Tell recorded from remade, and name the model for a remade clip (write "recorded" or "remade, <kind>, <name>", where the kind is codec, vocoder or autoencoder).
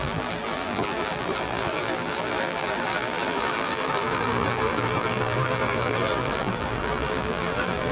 remade, vocoder, BigVGAN v2